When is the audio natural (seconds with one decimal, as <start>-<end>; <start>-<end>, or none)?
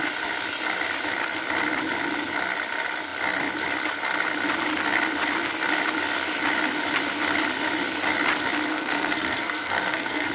0.0-8.7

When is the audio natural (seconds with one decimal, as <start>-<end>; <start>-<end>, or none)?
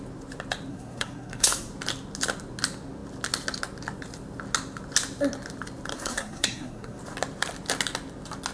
0.0-0.7; 1.7-5.9; 7.0-8.5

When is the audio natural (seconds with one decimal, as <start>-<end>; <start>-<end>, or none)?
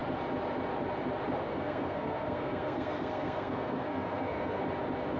0.0-1.5; 4.6-5.2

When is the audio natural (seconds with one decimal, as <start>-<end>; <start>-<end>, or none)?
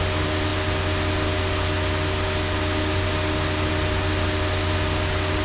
0.0-5.4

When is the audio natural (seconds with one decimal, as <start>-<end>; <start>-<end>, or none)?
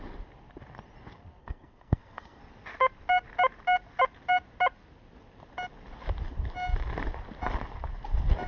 0.0-1.4; 2.4-8.5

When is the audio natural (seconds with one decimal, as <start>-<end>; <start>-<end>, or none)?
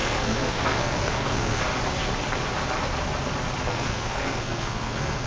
1.6-3.7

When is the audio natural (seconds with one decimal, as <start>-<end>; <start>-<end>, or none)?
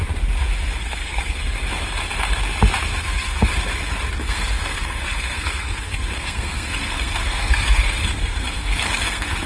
0.0-0.8; 1.4-3.0; 3.5-4.2